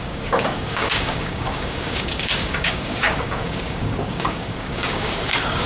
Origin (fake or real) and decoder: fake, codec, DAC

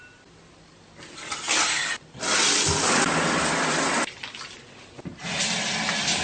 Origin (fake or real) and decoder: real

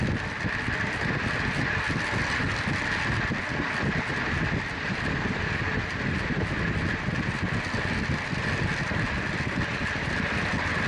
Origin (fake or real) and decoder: real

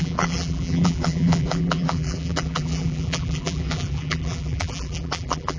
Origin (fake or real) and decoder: fake, vocoder, BigVGAN v2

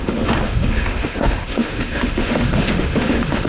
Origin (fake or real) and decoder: fake, autoencoder, DAC-VAE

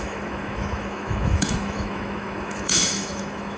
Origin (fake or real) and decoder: fake, autoencoder, DAC-VAE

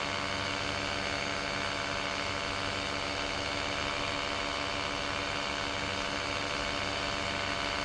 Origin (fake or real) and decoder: real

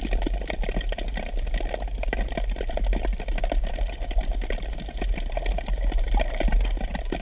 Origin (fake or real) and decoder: real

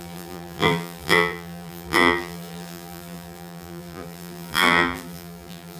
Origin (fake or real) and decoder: fake, vocoder, BigVGAN v2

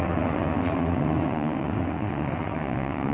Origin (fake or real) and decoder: fake, vocoder, WaveNeXt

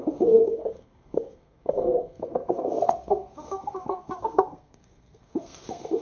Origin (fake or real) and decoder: fake, codec, SNAC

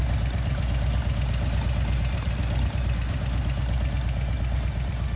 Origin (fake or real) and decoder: real